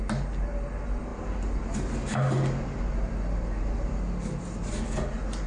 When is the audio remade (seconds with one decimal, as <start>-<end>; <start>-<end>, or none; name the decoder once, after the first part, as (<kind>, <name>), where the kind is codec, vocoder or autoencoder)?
none